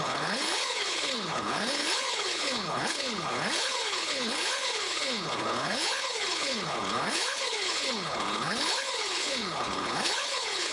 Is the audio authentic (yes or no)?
no